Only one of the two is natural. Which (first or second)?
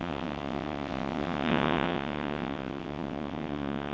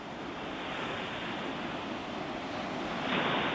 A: second